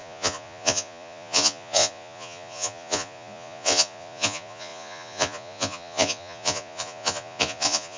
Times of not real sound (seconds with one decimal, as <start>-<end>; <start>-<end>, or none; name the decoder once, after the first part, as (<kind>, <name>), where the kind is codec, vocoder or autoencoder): 0.0-8.0 (vocoder, Vocos)